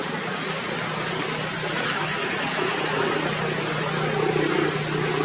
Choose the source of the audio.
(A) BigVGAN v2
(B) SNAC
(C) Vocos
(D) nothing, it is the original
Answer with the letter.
D